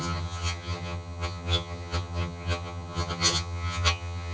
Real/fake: fake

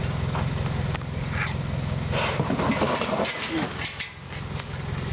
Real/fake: real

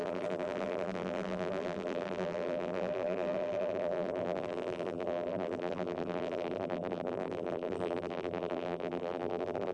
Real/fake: fake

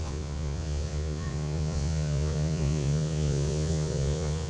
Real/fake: fake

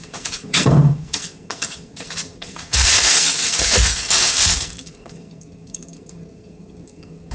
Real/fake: fake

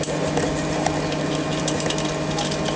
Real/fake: real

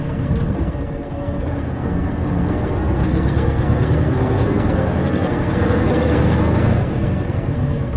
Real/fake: fake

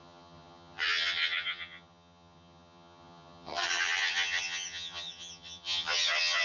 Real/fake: fake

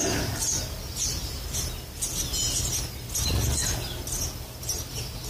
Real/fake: real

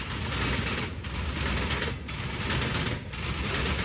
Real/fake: real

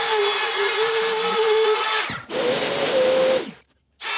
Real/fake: real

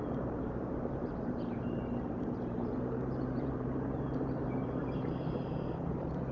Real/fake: fake